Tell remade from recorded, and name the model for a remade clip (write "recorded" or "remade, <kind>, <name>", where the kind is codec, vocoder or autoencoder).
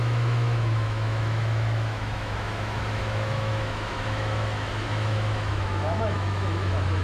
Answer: remade, autoencoder, DAC-VAE